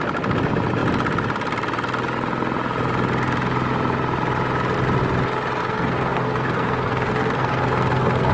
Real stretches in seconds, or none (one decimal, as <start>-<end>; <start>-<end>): 0.0-5.6